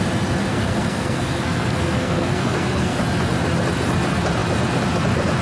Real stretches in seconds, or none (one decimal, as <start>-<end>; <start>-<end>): 0.0-0.5; 3.0-5.4